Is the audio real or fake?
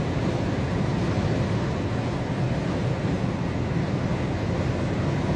real